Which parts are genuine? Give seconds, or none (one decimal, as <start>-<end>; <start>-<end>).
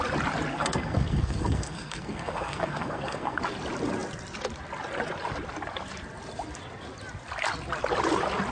0.0-0.5; 3.4-8.5